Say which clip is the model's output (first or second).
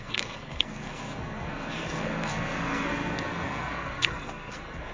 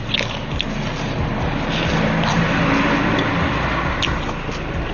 first